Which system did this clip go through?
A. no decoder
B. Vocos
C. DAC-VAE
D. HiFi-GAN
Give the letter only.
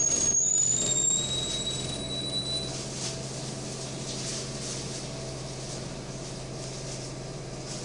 A